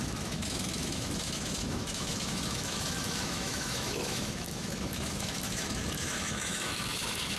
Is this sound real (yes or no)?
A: no